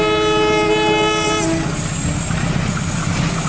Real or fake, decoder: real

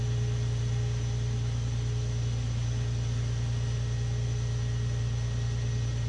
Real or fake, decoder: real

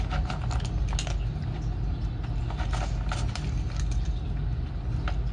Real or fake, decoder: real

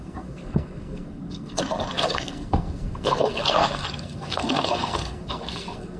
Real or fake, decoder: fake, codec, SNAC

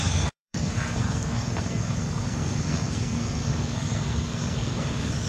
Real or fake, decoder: fake, codec, SNAC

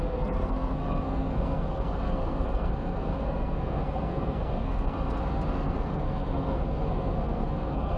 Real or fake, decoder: fake, codec, SNAC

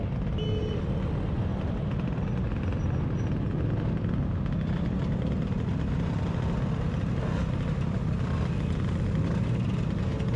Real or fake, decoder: real